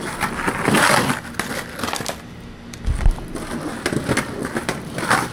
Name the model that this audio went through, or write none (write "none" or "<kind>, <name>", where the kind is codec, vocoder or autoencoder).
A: none